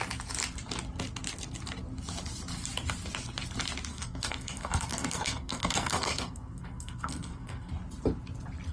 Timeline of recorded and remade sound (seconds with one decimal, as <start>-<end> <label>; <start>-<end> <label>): 0.0-3.9 recorded; 3.9-7.7 remade; 7.7-8.7 recorded